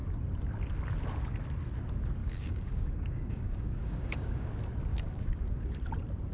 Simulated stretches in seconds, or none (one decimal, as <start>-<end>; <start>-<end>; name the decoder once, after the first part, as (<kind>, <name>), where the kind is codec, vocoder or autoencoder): 2.2-4.5 (codec, DAC); 4.9-5.8

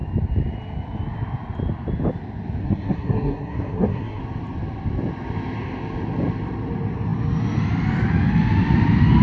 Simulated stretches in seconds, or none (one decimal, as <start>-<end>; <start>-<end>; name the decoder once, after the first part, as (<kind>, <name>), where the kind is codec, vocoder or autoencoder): 2.6-4.2 (codec, SNAC)